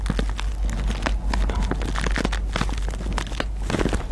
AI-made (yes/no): no